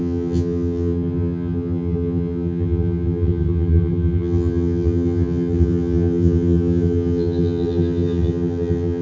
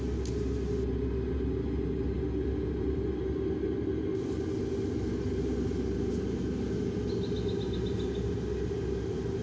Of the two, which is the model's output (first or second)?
first